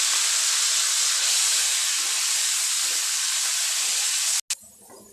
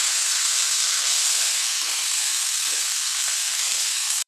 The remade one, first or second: second